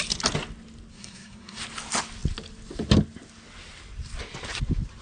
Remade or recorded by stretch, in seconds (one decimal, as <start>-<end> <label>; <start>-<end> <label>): 0.0-0.9 recorded; 0.9-1.6 remade; 1.6-5.0 recorded